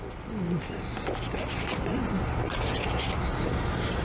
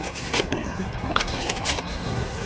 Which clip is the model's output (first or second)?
second